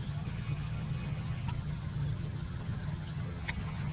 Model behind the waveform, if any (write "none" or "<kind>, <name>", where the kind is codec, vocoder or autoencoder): vocoder, HiFi-GAN